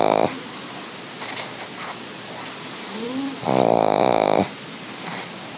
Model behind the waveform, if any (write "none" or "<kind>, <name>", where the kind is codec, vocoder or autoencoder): vocoder, BigVGAN v2